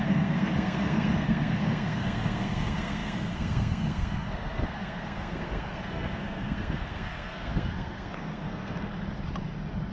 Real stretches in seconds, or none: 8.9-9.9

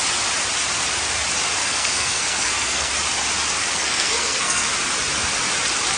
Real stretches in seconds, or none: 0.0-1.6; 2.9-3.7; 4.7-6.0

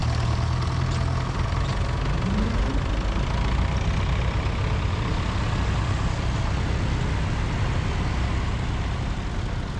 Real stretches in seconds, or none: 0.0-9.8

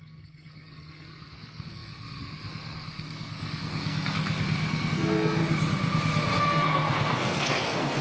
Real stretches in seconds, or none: 5.4-6.4